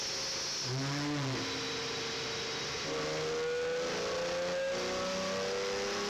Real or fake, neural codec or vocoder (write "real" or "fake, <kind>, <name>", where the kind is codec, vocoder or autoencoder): real